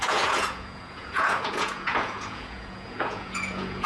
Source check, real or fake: fake